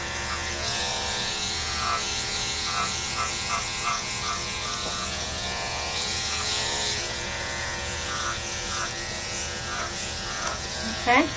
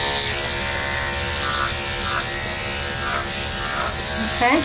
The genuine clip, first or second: second